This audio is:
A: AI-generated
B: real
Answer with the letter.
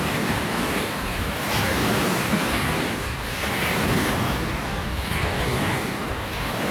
A